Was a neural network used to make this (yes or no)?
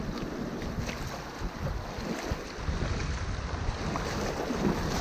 no